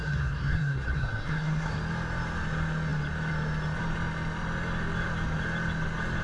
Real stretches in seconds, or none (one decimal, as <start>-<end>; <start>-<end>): 1.8-6.2